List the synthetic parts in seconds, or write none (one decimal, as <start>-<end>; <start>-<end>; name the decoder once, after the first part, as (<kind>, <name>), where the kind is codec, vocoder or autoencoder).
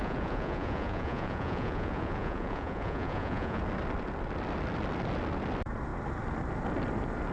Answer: 0.0-3.6 (vocoder, Vocos)